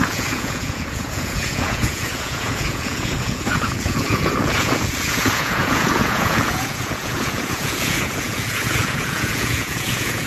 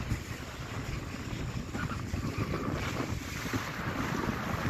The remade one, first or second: first